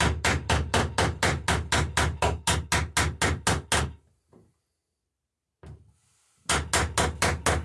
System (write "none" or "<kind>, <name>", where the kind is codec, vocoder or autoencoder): none